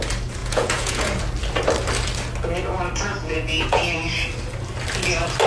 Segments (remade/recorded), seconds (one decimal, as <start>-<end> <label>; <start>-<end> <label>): 0.0-0.4 recorded; 0.4-1.2 remade; 1.2-3.1 recorded; 3.1-3.8 remade; 3.8-5.5 recorded